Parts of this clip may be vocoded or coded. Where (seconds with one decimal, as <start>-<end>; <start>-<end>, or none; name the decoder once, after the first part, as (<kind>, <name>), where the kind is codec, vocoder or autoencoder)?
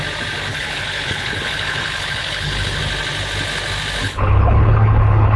0.5-2.8 (codec, HILCodec); 4.0-5.4